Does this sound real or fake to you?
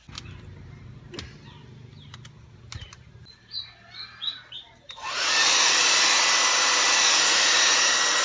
real